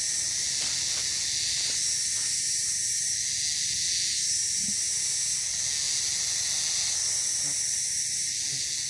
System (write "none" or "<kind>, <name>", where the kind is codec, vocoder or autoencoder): none